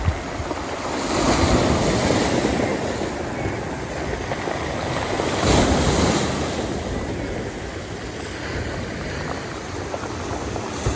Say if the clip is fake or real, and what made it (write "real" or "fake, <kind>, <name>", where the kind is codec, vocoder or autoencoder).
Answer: real